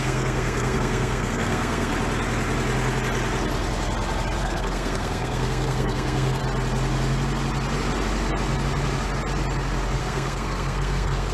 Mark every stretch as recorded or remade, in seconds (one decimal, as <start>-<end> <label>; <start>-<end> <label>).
0.0-1.9 remade; 1.9-4.4 recorded; 4.4-6.4 remade; 6.4-10.0 recorded; 10.0-11.3 remade